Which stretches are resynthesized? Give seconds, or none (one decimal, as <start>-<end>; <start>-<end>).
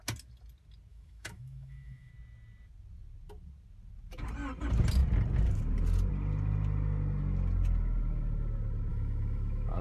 0.9-2.1; 8.9-9.8